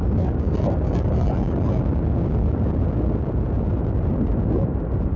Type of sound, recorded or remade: recorded